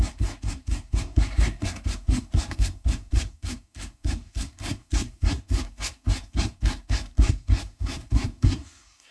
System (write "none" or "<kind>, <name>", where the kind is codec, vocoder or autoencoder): codec, SNAC